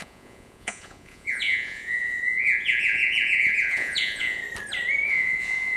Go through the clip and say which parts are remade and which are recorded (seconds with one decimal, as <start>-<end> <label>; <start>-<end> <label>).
0.0-4.4 remade; 4.4-5.1 recorded; 5.1-5.8 remade